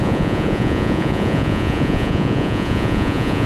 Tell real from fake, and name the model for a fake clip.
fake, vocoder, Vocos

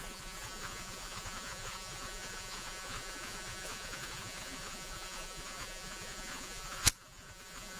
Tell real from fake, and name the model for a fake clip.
fake, vocoder, Vocos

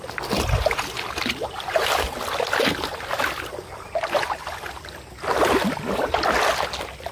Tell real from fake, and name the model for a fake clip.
real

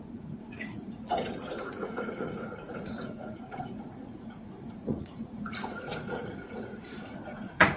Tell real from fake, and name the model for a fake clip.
fake, vocoder, Vocos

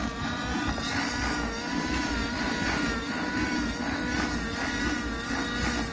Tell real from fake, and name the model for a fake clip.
real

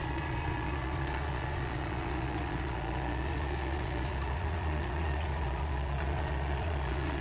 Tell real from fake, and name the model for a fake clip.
fake, vocoder, Vocos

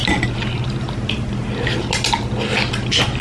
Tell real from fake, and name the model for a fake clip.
real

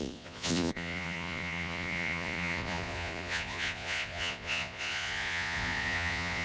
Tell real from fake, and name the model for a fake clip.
fake, vocoder, Vocos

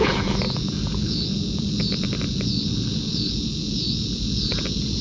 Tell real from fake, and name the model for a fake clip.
fake, vocoder, Vocos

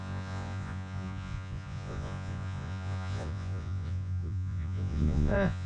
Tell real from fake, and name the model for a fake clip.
fake, vocoder, Vocos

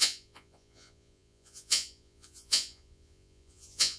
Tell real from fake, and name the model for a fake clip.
fake, vocoder, Vocos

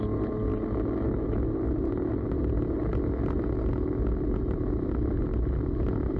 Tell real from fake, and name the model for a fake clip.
real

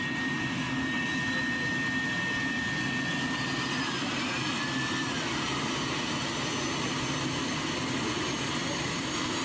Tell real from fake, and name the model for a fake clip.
real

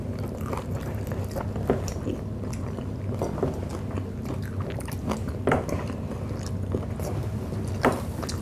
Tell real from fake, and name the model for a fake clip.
real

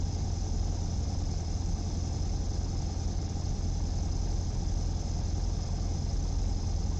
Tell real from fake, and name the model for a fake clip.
real